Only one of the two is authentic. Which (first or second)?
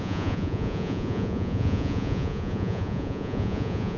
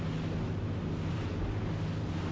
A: second